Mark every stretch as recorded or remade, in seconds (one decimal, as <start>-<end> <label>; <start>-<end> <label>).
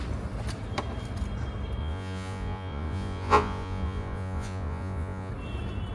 0.0-1.8 recorded; 1.8-5.3 remade; 5.3-5.9 recorded